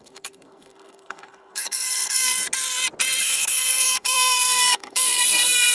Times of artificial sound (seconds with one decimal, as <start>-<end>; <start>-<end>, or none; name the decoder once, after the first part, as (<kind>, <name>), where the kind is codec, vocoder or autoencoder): 0.0-2.4 (codec, SNAC); 3.2-5.7